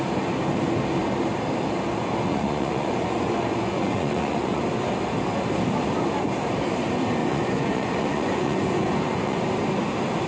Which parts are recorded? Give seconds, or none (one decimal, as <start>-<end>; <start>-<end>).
0.0-2.3; 4.6-7.2; 9.4-10.3